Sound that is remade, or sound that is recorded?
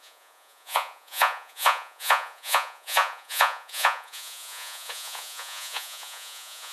remade